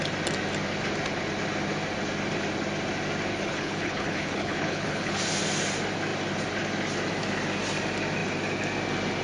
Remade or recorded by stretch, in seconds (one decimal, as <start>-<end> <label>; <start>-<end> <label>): 0.0-3.3 recorded; 3.3-5.2 remade; 5.2-9.2 recorded